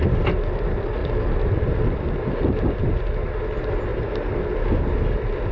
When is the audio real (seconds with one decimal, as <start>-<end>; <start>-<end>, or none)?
0.0-1.0; 2.9-3.9; 4.4-5.5